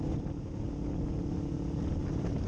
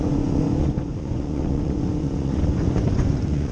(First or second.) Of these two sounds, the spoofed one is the second